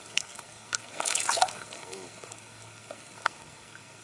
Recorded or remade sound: remade